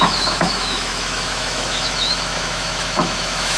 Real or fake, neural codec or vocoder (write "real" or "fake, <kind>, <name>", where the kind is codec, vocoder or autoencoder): fake, autoencoder, DAC-VAE